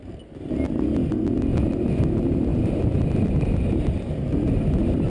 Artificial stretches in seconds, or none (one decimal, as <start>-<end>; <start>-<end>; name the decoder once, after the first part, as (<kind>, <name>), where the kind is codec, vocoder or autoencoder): none